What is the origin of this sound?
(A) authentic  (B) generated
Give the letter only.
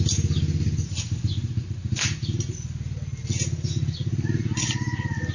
A